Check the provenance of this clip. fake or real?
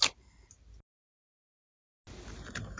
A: real